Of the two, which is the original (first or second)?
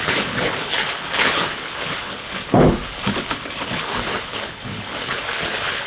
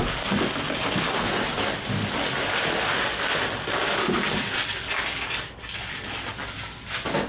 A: second